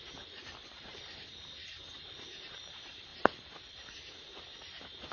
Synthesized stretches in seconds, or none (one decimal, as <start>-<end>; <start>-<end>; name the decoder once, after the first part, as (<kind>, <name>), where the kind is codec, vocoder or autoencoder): 0.0-3.1 (vocoder, BigVGAN v2); 3.7-4.3

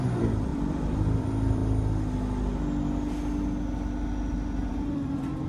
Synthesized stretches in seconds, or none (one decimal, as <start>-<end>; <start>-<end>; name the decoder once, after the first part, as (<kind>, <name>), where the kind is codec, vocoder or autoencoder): 0.0-1.6 (vocoder, BigVGAN v2); 4.7-5.5